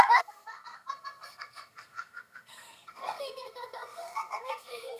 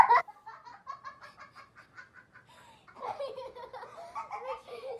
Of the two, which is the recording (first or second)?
second